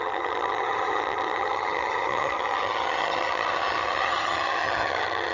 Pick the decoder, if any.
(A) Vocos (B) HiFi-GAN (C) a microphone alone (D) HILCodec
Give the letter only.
B